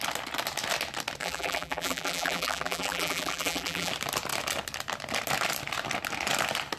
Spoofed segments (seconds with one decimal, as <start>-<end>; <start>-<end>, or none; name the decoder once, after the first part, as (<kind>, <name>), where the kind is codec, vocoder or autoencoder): 1.2-3.9 (vocoder, BigVGAN v2)